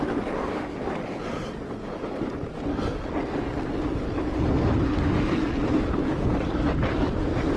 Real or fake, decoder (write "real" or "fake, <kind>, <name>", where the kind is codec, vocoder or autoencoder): real